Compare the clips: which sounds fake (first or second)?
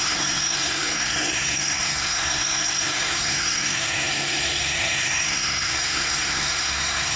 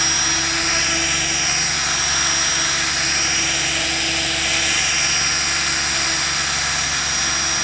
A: first